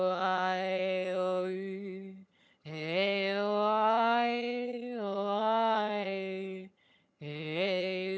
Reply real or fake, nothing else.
fake